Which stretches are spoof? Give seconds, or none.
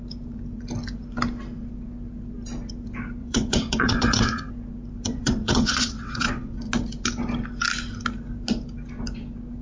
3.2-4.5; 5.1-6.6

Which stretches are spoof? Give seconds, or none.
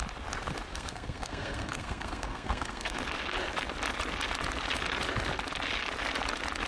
0.7-3.0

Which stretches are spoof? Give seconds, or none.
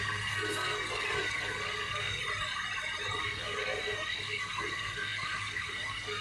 0.0-2.2; 3.2-6.2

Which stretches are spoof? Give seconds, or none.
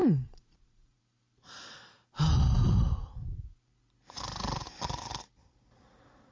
0.0-1.0